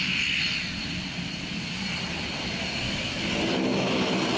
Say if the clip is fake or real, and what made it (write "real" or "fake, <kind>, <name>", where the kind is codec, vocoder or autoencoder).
real